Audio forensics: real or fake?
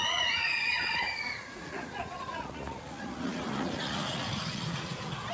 fake